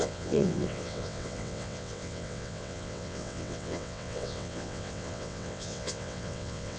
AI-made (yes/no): yes